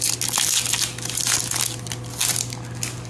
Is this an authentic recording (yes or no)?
yes